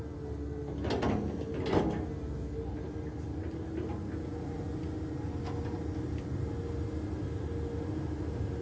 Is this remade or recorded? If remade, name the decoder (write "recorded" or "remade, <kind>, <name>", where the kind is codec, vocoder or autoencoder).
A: recorded